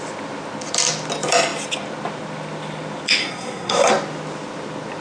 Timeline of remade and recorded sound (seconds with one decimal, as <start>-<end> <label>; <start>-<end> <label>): 0.0-3.2 recorded; 3.2-3.9 remade; 3.9-5.0 recorded